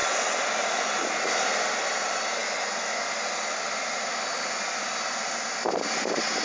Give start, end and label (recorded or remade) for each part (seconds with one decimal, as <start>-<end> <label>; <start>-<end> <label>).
0.0-6.4 recorded